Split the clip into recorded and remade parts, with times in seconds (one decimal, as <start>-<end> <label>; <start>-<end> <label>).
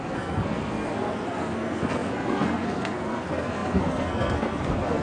0.0-5.0 remade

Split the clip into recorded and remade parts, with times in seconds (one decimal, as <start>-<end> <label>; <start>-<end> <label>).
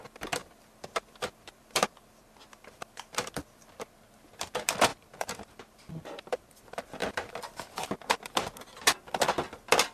0.0-0.4 recorded; 0.4-3.3 remade; 3.3-4.9 recorded; 4.9-6.6 remade; 6.6-7.0 recorded; 7.0-7.8 remade; 7.8-9.9 recorded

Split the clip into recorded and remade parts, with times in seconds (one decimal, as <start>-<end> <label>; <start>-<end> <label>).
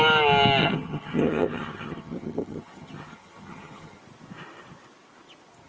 0.0-0.6 recorded; 0.6-4.0 remade; 4.0-5.7 recorded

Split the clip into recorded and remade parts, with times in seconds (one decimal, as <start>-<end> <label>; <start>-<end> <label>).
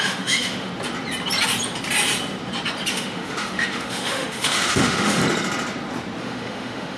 0.0-0.7 remade; 0.7-2.9 recorded; 2.9-5.2 remade; 5.2-6.2 recorded; 6.2-7.0 remade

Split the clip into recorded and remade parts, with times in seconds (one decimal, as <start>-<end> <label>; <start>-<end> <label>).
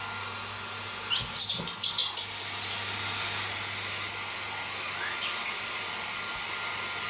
0.0-7.1 recorded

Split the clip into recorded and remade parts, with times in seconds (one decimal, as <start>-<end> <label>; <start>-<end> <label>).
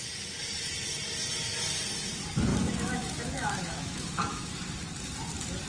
0.0-2.5 recorded; 2.5-4.5 remade; 4.5-5.7 recorded